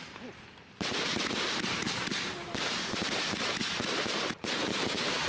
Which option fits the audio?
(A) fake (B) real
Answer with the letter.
A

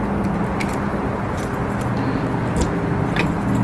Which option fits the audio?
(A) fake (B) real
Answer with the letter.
B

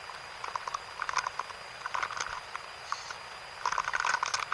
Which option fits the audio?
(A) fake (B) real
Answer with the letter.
B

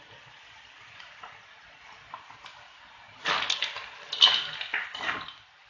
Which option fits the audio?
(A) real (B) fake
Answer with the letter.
A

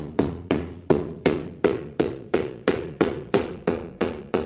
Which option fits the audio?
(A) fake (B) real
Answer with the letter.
A